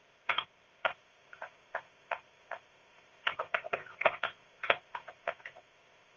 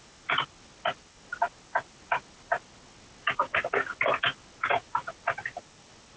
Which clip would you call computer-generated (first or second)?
first